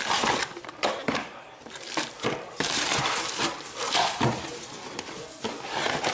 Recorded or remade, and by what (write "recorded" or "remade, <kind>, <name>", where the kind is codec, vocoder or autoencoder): remade, vocoder, BigVGAN v2